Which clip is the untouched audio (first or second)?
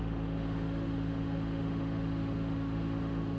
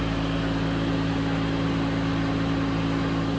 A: second